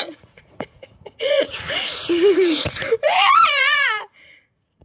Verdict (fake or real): fake